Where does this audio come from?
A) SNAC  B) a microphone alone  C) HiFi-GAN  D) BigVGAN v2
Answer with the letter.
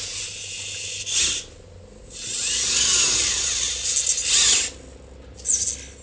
B